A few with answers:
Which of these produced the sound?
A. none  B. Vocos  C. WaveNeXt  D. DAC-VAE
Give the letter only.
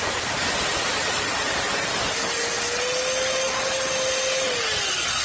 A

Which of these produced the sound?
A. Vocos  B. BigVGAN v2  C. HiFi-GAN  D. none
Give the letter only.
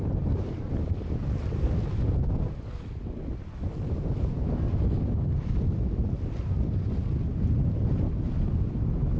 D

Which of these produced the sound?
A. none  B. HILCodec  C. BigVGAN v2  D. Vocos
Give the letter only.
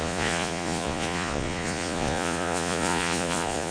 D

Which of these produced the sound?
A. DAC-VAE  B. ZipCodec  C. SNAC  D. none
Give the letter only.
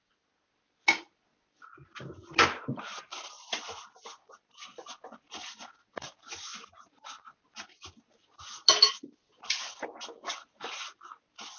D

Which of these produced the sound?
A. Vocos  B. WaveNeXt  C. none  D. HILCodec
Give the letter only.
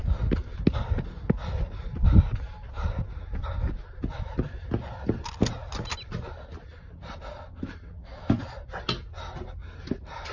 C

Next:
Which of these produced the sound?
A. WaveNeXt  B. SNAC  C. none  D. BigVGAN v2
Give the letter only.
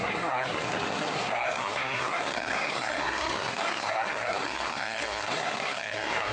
B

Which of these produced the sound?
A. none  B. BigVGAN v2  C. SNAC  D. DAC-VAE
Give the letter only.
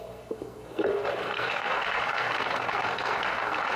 C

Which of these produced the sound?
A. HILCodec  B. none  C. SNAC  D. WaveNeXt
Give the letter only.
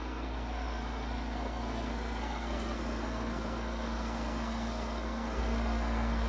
C